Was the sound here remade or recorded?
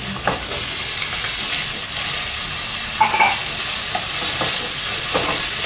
recorded